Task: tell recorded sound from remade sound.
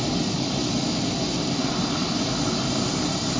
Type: recorded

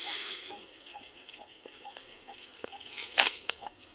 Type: remade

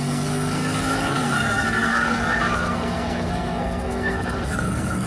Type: remade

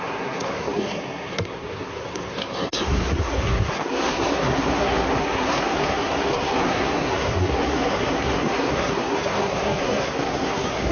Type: remade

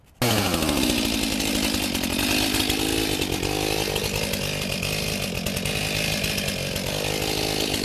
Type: recorded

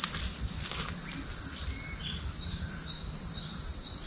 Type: recorded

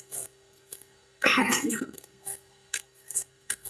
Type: remade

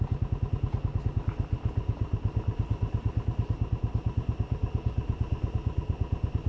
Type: recorded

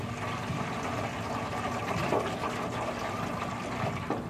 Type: recorded